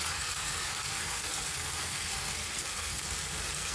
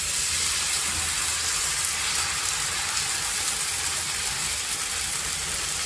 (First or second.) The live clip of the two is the second